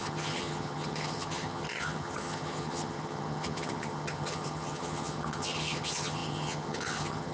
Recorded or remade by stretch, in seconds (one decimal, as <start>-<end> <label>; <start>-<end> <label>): 0.0-7.3 remade